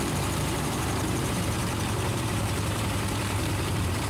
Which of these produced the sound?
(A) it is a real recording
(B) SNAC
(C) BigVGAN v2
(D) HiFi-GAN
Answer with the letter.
C